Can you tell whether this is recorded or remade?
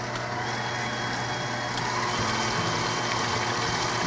recorded